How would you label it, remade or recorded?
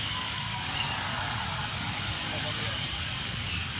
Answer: remade